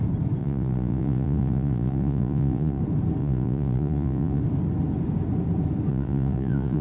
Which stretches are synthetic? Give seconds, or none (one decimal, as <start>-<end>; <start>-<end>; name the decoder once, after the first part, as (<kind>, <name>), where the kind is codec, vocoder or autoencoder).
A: 0.4-2.8 (vocoder, Vocos); 3.2-4.4; 5.9-6.8